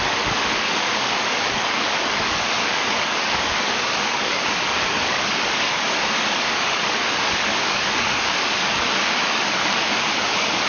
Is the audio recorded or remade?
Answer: remade